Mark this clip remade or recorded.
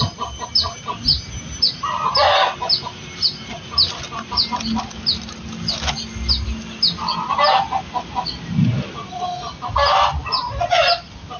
recorded